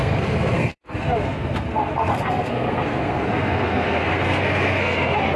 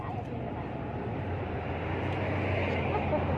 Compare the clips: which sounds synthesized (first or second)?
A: first